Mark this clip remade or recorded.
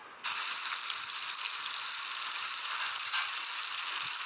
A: recorded